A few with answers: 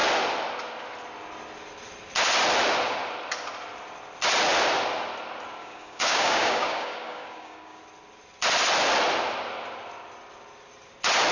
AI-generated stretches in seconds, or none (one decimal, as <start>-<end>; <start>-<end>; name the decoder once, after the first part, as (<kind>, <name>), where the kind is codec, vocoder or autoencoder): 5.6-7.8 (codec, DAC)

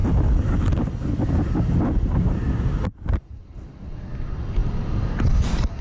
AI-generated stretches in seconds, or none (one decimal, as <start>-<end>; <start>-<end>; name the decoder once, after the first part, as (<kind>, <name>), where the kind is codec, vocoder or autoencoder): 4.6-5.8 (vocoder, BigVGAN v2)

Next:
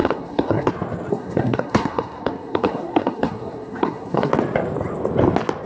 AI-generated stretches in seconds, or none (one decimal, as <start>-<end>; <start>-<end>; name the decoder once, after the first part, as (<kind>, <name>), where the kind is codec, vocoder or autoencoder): 0.0-0.7 (codec, SNAC); 1.1-4.3

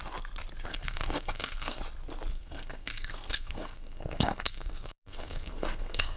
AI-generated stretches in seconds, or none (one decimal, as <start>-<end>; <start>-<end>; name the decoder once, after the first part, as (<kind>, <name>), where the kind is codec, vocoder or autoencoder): 0.7-1.8 (codec, SNAC); 2.3-6.2